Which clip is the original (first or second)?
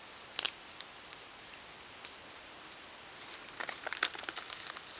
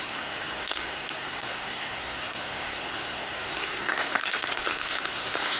first